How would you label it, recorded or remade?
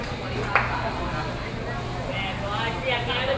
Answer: recorded